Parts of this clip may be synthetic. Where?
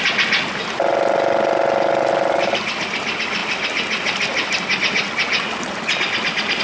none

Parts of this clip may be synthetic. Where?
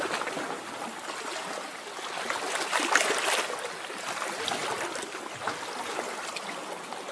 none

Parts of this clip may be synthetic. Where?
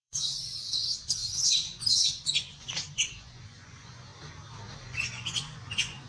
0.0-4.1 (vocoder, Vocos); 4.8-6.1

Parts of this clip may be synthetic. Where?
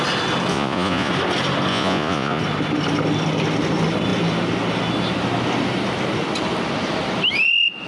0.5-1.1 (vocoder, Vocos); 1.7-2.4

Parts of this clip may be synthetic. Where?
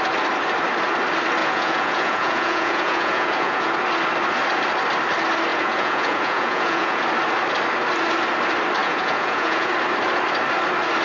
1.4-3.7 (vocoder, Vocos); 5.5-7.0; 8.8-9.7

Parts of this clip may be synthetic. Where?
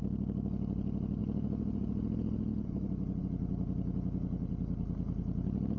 none